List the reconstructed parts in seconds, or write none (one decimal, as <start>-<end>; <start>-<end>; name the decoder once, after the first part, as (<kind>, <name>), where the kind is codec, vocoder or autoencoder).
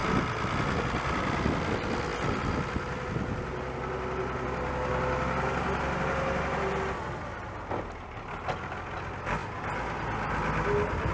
none